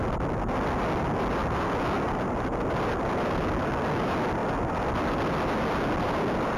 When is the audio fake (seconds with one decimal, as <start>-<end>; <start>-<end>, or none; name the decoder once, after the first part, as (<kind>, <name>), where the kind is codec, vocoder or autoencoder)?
none